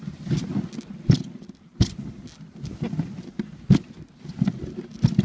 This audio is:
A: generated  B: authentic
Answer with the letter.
B